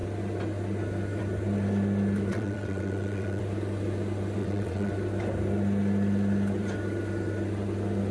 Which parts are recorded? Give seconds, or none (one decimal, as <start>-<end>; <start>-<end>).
0.0-2.3; 3.4-4.4; 4.9-8.1